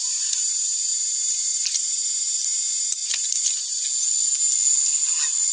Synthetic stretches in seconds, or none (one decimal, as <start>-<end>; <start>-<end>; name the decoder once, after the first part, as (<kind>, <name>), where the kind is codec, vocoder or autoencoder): none

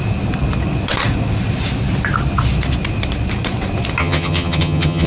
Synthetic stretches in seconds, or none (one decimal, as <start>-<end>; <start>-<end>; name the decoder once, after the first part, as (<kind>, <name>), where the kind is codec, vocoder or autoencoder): 4.0-5.1 (vocoder, HiFi-GAN)